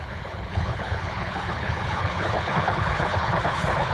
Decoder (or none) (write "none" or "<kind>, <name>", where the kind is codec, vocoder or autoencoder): codec, HILCodec